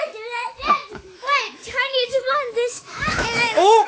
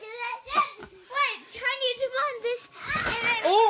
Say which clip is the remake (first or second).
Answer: first